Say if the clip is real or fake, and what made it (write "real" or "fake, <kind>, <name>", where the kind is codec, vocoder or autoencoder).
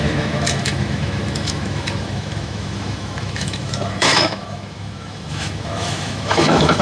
fake, autoencoder, DAC-VAE